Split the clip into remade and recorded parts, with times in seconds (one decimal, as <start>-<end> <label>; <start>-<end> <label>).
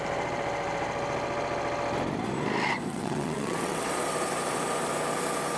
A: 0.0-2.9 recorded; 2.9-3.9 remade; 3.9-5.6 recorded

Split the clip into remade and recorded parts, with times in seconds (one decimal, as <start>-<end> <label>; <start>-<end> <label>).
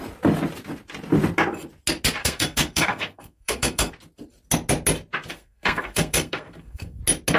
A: 0.0-2.2 recorded; 2.2-3.9 remade; 3.9-5.3 recorded; 5.3-7.0 remade; 7.0-7.4 recorded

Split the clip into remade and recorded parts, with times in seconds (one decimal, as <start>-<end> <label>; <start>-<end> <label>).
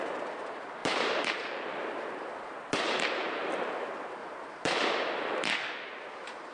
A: 0.0-0.8 recorded; 0.8-3.5 remade; 3.5-4.2 recorded; 4.2-5.1 remade; 5.1-6.5 recorded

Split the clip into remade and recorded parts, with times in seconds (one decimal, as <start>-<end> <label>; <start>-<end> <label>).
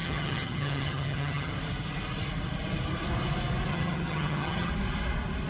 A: 0.0-1.5 remade; 1.5-3.7 recorded; 3.7-4.7 remade; 4.7-5.5 recorded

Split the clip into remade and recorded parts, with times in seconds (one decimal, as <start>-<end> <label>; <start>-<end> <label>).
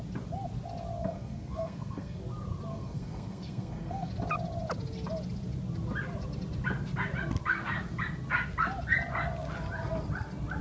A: 0.0-1.0 recorded; 1.0-2.2 remade; 2.2-2.7 recorded; 2.7-4.1 remade; 4.1-10.6 recorded